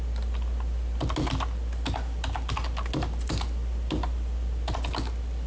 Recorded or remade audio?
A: recorded